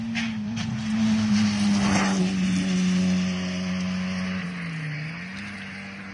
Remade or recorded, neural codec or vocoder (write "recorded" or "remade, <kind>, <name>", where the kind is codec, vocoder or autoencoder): recorded